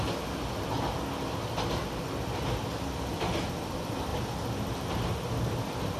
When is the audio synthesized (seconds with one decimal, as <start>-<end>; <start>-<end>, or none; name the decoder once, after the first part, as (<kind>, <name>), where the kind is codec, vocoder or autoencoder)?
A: none